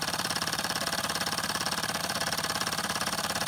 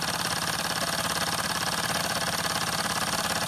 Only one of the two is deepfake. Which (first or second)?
first